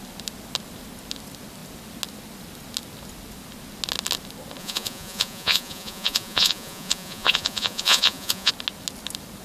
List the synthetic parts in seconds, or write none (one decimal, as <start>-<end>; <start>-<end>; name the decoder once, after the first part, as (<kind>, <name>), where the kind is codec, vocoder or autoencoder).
4.6-8.5 (vocoder, Vocos)